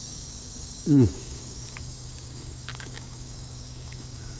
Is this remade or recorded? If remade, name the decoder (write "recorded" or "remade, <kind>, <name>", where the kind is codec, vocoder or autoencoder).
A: remade, codec, DAC